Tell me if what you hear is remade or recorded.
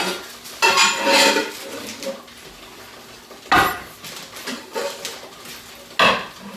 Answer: recorded